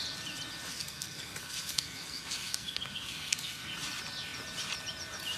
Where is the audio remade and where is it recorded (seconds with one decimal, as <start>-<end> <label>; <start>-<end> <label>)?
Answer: 0.0-0.7 recorded; 0.7-3.7 remade; 3.7-5.4 recorded